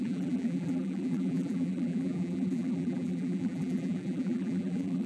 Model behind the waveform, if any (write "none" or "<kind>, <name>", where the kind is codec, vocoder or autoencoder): vocoder, BigVGAN v2